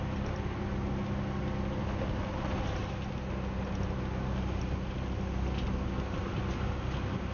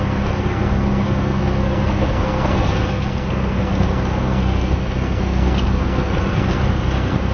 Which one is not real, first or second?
second